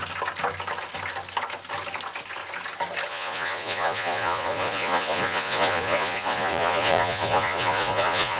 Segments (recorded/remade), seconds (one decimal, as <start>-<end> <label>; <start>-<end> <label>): 0.0-3.1 recorded; 3.1-8.4 remade

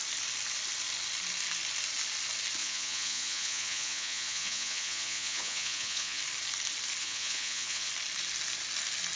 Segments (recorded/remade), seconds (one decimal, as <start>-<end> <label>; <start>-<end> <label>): 0.0-2.6 recorded; 2.6-6.2 remade; 6.2-7.0 recorded; 7.0-7.9 remade; 7.9-9.2 recorded

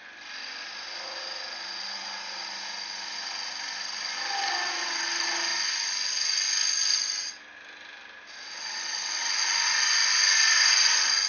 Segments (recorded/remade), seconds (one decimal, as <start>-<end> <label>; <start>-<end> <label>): 0.0-11.3 recorded